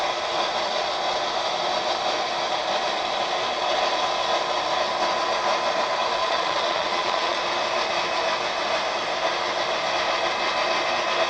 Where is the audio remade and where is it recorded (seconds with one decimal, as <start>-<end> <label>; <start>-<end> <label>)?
0.0-6.2 recorded; 6.2-7.4 remade; 7.4-11.3 recorded